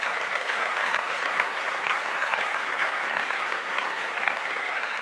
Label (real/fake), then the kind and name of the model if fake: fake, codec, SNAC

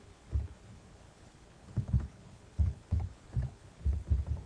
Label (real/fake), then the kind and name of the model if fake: fake, codec, HILCodec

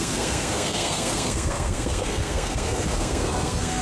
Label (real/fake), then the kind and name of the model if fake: fake, codec, SNAC